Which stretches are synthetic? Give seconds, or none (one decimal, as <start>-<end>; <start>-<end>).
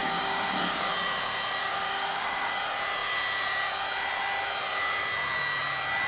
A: 0.0-0.9; 1.6-2.5